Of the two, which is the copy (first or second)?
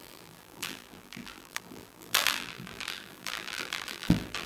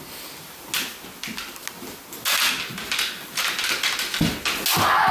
first